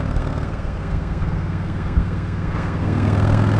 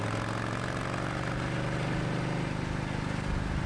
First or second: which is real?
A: second